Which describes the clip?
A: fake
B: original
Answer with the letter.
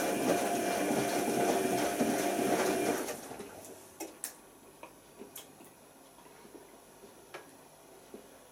B